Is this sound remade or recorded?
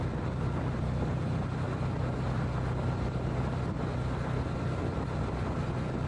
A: recorded